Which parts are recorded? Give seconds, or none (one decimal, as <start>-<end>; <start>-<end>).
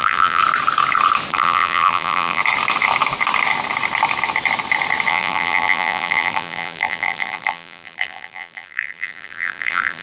0.4-1.3; 2.4-5.1